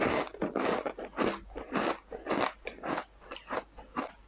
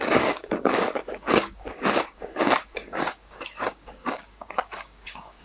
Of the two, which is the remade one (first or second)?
second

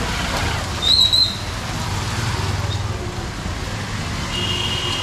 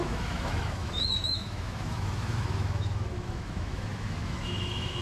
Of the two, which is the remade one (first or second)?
second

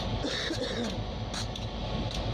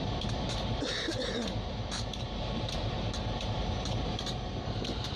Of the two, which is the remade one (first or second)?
second